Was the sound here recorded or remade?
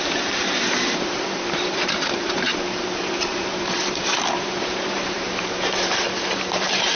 remade